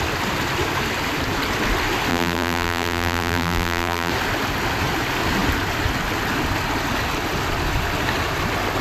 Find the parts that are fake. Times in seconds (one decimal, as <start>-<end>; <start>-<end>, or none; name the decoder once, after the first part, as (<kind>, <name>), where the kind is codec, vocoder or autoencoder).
2.1-4.1 (vocoder, BigVGAN v2)